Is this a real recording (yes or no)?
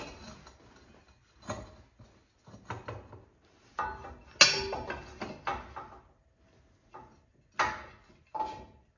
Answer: yes